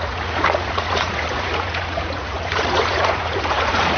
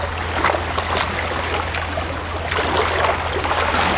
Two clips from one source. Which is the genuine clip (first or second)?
second